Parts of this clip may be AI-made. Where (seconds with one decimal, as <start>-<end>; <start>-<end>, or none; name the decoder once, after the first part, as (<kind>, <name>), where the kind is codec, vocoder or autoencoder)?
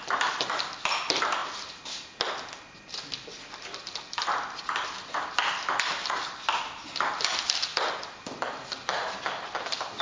none